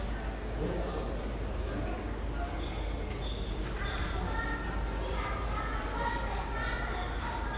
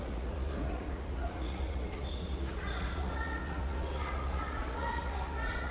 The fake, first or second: second